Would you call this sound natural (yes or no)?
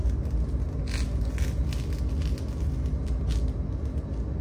yes